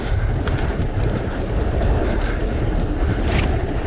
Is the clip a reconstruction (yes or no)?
yes